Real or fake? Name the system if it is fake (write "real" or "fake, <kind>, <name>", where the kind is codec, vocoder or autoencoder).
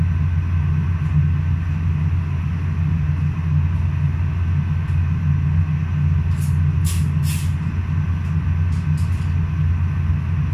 real